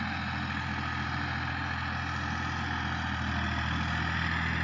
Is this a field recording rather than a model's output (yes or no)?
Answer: yes